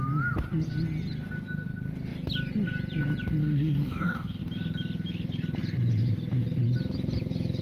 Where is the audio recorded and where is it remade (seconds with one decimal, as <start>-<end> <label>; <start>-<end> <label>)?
0.0-3.4 recorded; 3.4-4.4 remade; 4.4-7.6 recorded